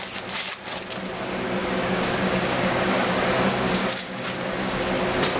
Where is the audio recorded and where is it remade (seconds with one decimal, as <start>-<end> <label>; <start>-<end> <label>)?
0.0-1.6 recorded; 1.6-4.8 remade; 4.8-5.4 recorded